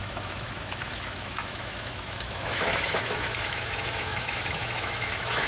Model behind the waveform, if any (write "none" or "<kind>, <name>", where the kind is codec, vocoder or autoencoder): autoencoder, DAC-VAE